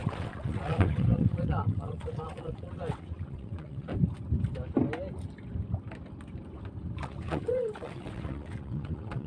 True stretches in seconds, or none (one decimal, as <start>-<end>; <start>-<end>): 3.9-7.0